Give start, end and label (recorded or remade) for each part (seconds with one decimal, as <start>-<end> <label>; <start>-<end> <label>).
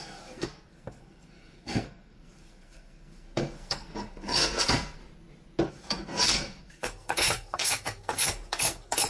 0.0-5.0 remade; 5.0-5.7 recorded; 5.7-9.1 remade